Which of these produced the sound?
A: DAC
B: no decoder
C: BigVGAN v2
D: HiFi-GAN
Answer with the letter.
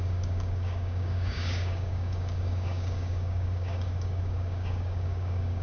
A